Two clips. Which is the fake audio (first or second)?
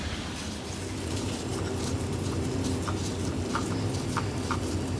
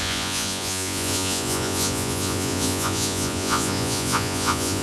second